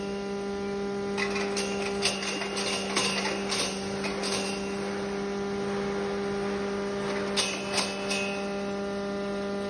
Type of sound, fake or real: real